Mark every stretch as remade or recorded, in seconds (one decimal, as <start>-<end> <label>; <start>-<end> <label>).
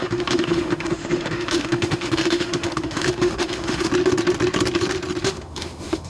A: 0.0-3.9 remade; 3.9-5.2 recorded; 5.2-6.1 remade